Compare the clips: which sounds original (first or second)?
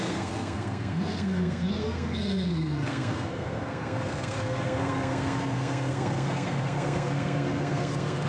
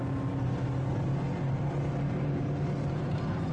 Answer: second